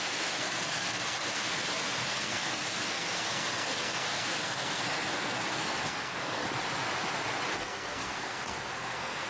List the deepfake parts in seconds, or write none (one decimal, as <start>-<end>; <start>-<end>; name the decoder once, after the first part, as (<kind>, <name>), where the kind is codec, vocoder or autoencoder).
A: 0.0-6.4 (codec, SNAC); 7.5-9.3